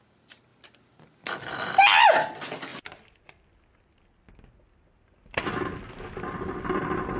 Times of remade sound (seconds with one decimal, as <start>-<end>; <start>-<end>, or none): none